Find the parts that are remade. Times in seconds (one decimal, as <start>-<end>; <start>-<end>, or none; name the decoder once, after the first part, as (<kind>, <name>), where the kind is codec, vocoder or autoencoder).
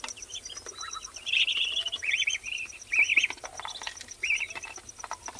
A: none